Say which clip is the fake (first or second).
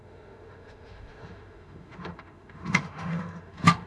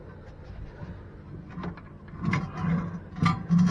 first